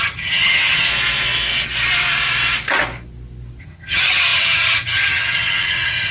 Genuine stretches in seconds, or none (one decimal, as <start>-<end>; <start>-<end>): 0.9-3.6